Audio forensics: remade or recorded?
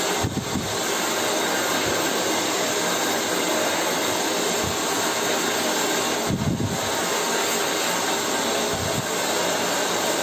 recorded